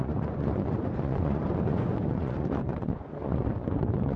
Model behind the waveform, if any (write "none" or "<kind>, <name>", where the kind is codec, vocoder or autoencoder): vocoder, Vocos